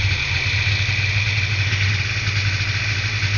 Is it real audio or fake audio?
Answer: real